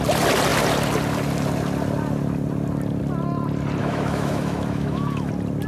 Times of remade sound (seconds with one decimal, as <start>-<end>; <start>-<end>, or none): 3.8-5.3